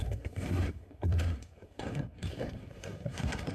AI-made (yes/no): yes